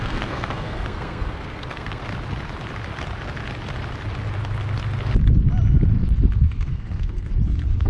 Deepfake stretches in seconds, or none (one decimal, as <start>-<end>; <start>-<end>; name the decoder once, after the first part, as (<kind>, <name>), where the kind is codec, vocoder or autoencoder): 0.0-2.0 (codec, SNAC); 5.9-7.9